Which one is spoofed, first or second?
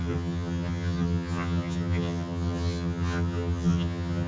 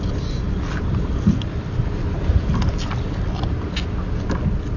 first